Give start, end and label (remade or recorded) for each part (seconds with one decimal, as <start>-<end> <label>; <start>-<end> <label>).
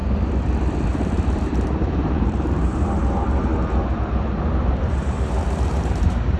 0.0-0.9 recorded; 0.9-3.5 remade; 3.5-4.8 recorded; 4.8-6.4 remade